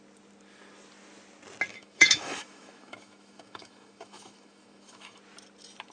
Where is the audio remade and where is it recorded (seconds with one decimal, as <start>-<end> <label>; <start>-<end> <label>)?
0.0-1.7 recorded; 1.7-5.2 remade; 5.2-5.9 recorded